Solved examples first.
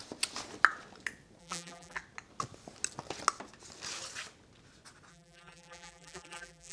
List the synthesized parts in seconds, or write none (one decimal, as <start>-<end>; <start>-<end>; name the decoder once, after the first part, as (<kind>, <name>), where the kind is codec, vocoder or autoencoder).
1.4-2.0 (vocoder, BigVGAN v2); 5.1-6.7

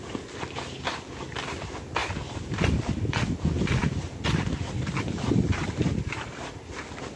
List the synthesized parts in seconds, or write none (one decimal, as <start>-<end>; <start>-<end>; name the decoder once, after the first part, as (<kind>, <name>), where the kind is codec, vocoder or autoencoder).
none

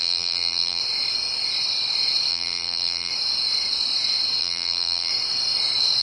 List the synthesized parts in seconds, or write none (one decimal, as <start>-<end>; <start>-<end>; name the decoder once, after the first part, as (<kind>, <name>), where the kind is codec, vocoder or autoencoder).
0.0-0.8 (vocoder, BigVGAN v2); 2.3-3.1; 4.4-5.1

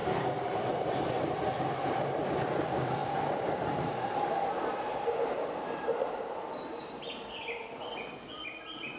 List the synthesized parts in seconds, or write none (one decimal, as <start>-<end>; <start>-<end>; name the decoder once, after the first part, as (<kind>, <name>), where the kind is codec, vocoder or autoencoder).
0.0-0.8 (vocoder, BigVGAN v2); 3.0-7.0

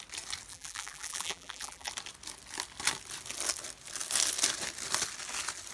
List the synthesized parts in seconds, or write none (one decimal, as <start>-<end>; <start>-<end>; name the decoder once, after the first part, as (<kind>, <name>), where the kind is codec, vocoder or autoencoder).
0.5-1.9 (vocoder, BigVGAN v2)

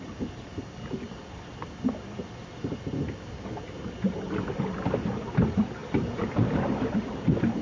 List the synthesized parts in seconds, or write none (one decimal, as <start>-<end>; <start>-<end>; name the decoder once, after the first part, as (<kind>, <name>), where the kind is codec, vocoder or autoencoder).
none

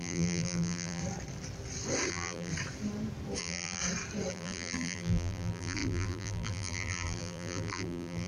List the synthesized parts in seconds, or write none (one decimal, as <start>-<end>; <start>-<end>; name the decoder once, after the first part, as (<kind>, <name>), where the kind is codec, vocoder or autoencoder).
0.0-1.0 (vocoder, BigVGAN v2); 2.1-2.5; 3.4-3.8; 4.3-8.3